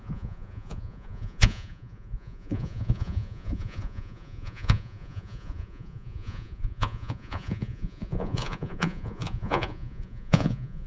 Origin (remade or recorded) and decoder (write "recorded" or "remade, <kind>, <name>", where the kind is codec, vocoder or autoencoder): remade, vocoder, Vocos